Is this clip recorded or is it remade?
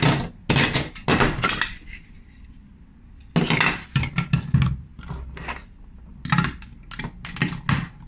recorded